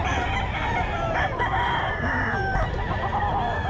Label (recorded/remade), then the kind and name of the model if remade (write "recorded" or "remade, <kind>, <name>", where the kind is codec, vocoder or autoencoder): recorded